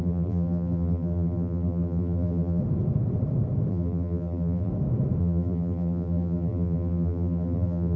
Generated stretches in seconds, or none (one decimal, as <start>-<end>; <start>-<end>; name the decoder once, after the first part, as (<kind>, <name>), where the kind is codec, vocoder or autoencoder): 0.0-2.6 (vocoder, BigVGAN v2); 3.7-4.7; 5.2-8.0